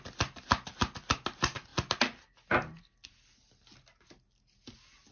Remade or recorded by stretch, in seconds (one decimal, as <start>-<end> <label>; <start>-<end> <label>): 0.0-5.1 recorded